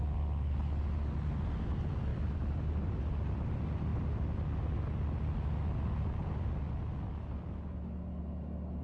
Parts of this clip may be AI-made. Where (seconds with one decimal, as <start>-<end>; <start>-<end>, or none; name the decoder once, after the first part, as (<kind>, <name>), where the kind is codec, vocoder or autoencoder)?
none

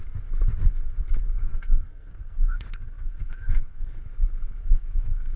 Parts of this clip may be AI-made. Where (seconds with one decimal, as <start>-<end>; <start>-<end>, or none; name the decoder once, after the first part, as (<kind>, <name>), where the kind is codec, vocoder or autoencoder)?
1.4-4.0 (codec, SNAC); 4.6-5.4

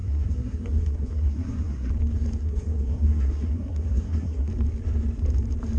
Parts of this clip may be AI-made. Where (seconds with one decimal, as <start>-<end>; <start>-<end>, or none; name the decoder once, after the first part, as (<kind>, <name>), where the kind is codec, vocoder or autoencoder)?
0.0-1.9 (codec, SNAC); 2.4-4.5

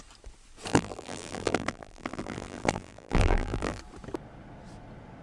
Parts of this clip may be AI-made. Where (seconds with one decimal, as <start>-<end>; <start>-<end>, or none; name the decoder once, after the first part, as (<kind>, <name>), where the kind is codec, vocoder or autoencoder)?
0.7-3.8 (vocoder, BigVGAN v2)

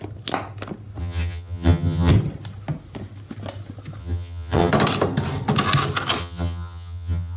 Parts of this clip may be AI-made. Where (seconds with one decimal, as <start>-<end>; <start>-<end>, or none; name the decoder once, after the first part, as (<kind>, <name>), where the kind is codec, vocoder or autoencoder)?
1.0-2.1 (vocoder, HiFi-GAN); 4.0-4.7; 6.2-7.4

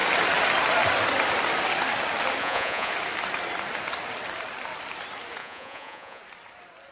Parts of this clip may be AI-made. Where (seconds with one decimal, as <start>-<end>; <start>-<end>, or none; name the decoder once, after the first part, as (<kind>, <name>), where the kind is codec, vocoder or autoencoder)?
2.4-2.9 (vocoder, Vocos); 5.4-6.2